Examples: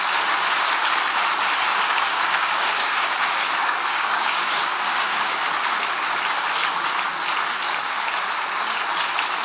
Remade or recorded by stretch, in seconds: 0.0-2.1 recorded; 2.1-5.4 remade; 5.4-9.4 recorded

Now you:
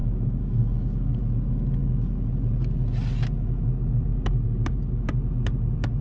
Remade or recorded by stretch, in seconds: 0.0-1.2 remade; 1.2-4.1 recorded; 4.1-5.0 remade; 5.0-6.0 recorded

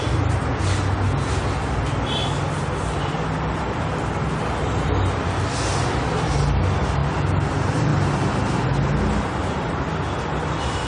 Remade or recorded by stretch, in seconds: 0.0-10.9 recorded